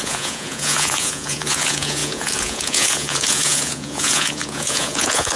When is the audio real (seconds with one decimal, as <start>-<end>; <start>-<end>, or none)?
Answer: none